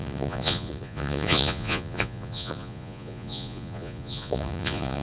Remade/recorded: remade